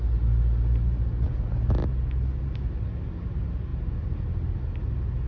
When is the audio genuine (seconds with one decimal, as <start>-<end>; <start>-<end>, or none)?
0.0-5.3